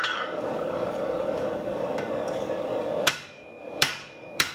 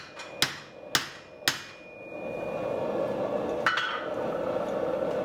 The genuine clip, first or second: second